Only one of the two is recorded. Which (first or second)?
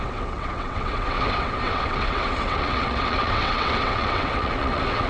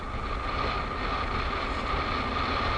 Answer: second